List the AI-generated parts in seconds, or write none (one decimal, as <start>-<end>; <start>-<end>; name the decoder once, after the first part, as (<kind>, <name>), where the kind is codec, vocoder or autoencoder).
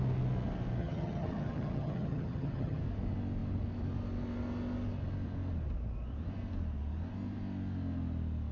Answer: 0.8-2.8 (vocoder, HiFi-GAN)